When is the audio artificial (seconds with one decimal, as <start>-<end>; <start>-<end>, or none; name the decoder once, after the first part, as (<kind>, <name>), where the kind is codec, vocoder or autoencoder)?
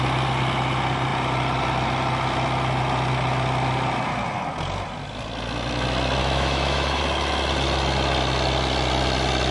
6.2-7.0 (autoencoder, DAC-VAE)